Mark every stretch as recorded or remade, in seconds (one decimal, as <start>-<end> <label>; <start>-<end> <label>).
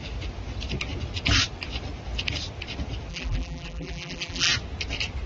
0.0-3.1 recorded; 3.1-4.5 remade; 4.5-5.3 recorded